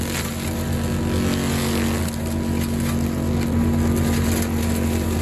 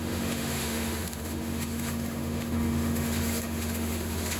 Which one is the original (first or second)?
first